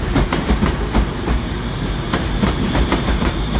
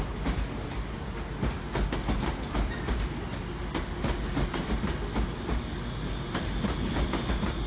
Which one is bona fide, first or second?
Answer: second